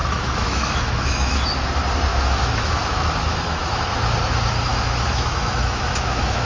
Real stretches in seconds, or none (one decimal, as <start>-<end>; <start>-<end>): 1.4-2.1; 3.8-4.7

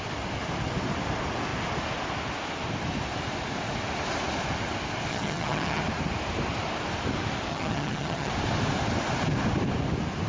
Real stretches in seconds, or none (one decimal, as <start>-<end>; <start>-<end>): 0.0-5.1; 5.8-7.5; 8.3-10.3

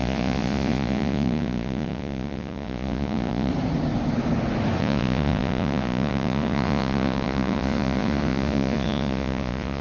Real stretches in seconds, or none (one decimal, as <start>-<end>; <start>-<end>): 3.5-4.8

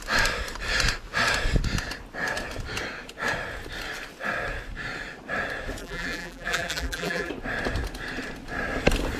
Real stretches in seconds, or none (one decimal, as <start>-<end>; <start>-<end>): 0.0-5.8; 7.3-9.2

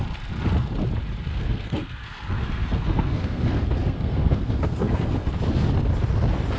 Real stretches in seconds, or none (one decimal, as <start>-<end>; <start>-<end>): 0.0-1.3; 5.3-6.6

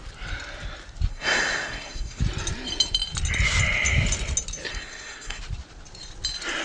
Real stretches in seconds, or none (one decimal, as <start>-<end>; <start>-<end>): 0.0-1.1; 2.2-4.7; 5.4-6.6

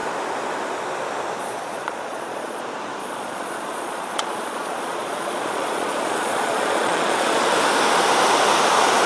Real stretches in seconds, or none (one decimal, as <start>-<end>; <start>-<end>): 0.0-1.4; 2.6-3.0; 7.5-9.1

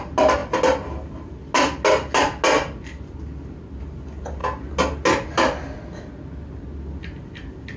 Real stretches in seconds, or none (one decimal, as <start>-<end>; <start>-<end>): 0.0-7.8